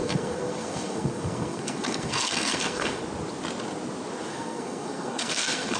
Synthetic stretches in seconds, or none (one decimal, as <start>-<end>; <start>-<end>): 0.0-3.0; 4.3-5.8